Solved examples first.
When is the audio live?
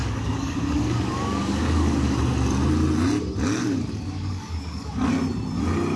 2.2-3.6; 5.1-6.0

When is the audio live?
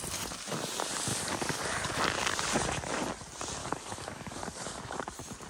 0.0-1.1; 2.0-3.6; 4.8-5.5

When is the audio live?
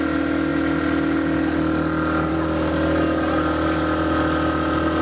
0.0-5.0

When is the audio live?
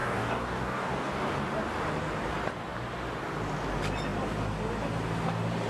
1.1-5.7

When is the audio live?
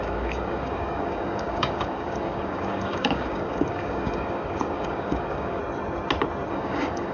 5.6-6.5